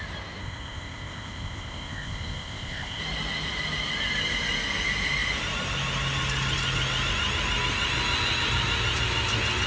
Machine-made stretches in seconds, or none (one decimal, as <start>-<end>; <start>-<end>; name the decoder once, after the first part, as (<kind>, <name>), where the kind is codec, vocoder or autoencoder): 0.4-3.0 (codec, ZipCodec)

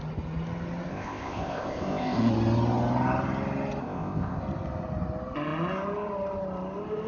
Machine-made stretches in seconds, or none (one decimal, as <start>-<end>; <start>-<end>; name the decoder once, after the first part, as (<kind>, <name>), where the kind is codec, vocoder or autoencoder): 0.9-2.3 (codec, ZipCodec); 3.8-4.4

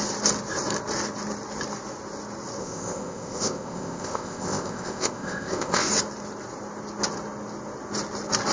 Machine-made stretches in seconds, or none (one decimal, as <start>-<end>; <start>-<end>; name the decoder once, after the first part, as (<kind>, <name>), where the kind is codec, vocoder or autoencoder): 2.6-5.9 (codec, ZipCodec)

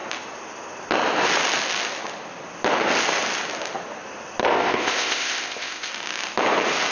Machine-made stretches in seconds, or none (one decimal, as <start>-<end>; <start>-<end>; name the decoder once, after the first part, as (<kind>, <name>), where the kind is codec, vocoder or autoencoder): 4.4-5.9 (codec, ZipCodec)

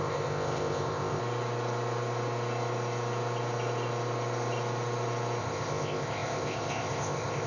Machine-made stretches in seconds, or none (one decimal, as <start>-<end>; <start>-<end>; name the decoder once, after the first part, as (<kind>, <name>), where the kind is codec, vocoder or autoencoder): 0.0-1.2 (codec, ZipCodec); 5.4-7.5

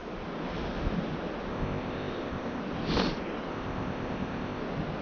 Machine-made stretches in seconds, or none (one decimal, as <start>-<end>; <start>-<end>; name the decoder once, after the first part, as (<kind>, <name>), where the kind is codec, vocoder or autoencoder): 1.5-2.6 (codec, ZipCodec); 3.5-4.6